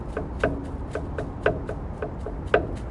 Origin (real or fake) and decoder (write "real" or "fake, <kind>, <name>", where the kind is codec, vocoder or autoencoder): real